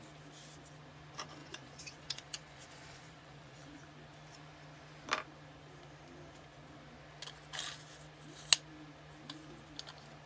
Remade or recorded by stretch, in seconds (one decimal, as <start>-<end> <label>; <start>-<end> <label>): 0.0-1.4 recorded; 1.4-3.8 remade; 3.8-10.3 recorded